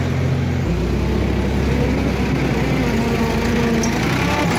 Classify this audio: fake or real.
real